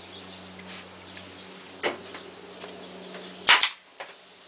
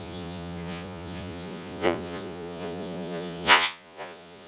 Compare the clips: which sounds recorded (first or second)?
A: first